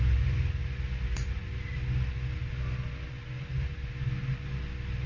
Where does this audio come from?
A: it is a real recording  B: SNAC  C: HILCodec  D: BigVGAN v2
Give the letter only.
A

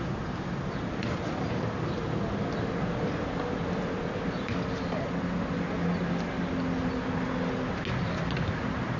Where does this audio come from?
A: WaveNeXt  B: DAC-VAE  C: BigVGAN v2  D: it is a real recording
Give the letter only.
D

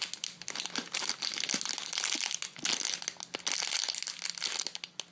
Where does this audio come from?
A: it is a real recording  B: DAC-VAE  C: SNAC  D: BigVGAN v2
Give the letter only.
A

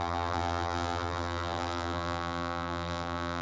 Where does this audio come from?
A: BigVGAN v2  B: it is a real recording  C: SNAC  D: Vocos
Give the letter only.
A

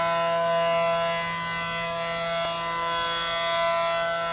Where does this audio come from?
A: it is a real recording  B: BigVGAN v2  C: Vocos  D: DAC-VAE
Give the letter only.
A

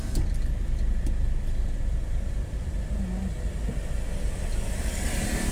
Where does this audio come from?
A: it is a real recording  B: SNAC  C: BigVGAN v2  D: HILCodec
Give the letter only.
C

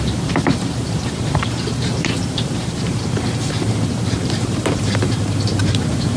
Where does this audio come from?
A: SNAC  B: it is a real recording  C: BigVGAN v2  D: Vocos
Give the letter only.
C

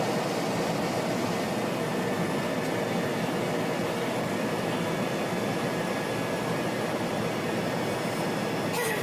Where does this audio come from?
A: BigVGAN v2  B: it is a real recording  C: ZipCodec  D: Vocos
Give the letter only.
B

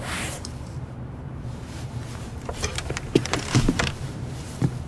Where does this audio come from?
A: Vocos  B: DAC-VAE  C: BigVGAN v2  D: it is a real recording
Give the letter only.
C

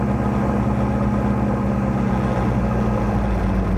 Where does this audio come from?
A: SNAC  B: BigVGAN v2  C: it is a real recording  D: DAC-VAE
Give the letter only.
C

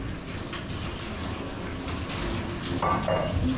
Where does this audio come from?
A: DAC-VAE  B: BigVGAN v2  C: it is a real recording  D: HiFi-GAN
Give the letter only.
C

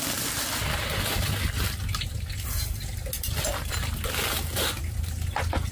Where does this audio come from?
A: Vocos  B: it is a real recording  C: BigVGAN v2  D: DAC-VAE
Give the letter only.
B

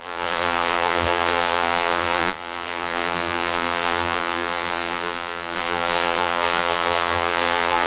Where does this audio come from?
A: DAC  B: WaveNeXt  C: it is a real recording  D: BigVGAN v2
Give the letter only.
D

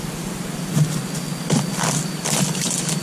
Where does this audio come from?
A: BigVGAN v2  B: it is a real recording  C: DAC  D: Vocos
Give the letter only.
B